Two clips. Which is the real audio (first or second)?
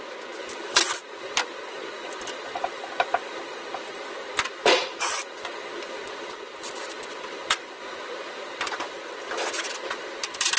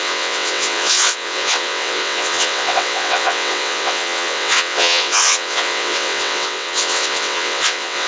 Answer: first